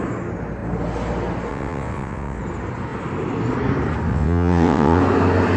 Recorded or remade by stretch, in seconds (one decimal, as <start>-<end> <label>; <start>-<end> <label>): 0.0-1.5 recorded; 1.5-2.4 remade; 2.4-4.1 recorded; 4.1-5.0 remade; 5.0-5.6 recorded